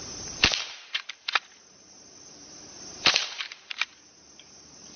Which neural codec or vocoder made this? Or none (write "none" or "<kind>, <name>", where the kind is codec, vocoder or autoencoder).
vocoder, BigVGAN v2